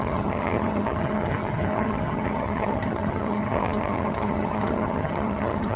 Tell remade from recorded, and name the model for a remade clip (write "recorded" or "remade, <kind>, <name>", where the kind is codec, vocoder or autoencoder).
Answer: remade, vocoder, HiFi-GAN